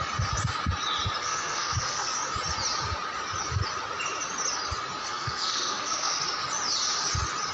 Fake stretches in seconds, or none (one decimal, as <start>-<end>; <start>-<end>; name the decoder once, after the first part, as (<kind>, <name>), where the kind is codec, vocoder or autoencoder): 1.2-2.1 (codec, SNAC); 5.0-6.2